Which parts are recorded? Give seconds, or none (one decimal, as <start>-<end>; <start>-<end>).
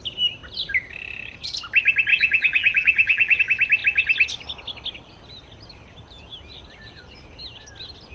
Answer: 0.0-2.1; 3.4-8.1